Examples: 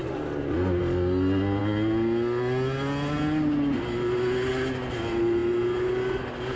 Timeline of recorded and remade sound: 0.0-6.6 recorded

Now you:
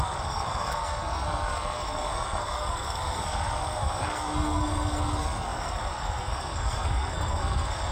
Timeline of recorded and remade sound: 0.0-7.9 remade

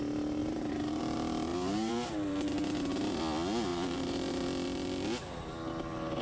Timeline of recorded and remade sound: 0.0-0.4 recorded; 0.4-1.0 remade; 1.0-1.5 recorded; 1.5-2.3 remade; 2.3-3.7 recorded; 3.7-4.3 remade; 4.3-6.2 recorded

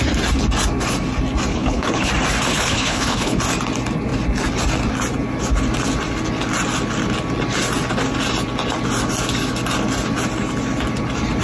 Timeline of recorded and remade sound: 0.0-1.5 recorded; 1.5-2.1 remade; 2.1-2.5 recorded; 2.5-3.4 remade; 3.4-11.4 recorded

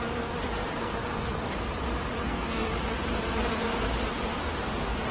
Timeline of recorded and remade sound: 0.0-0.8 recorded; 0.8-1.4 remade; 1.4-2.2 recorded; 2.2-2.7 remade; 2.7-5.1 recorded

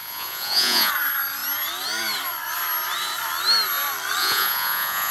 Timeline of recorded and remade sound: 0.0-0.9 remade; 0.9-4.2 recorded; 4.2-5.1 remade

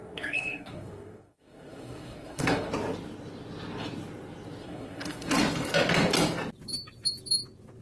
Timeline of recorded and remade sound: 0.0-2.7 remade; 2.7-4.6 recorded; 4.6-5.3 remade; 5.3-7.8 recorded

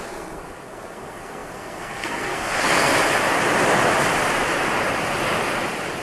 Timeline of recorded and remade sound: 0.0-2.9 remade; 2.9-6.0 recorded